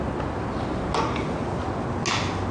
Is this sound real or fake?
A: real